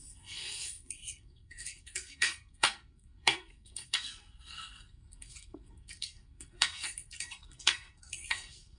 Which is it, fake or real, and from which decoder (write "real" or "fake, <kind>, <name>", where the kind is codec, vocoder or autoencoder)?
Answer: fake, codec, SNAC